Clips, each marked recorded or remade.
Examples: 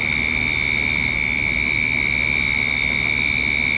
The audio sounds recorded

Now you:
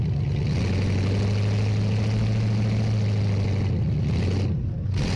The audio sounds recorded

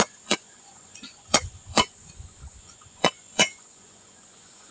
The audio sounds remade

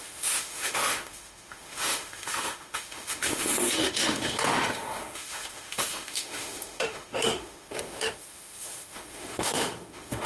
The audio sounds remade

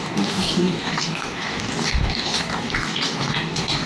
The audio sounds remade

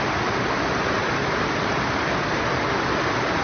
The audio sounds recorded